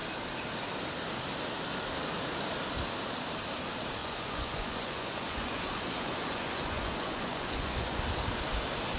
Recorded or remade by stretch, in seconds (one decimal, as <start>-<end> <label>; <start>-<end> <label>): 0.0-4.0 recorded; 4.0-8.0 remade; 8.0-9.0 recorded